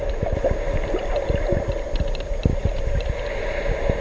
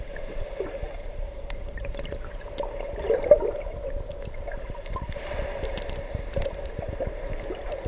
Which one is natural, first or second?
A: first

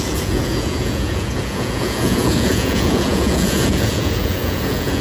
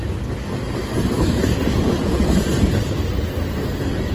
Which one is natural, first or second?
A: second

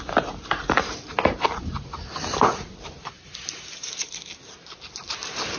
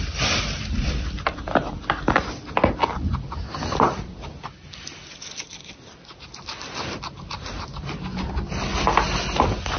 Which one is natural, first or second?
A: second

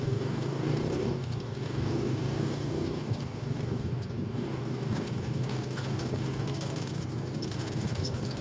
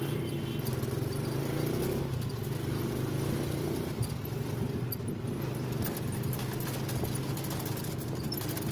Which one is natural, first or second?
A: second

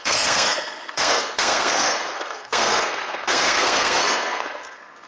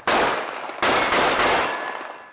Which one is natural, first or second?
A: second